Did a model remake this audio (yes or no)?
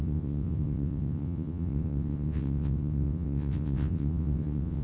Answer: yes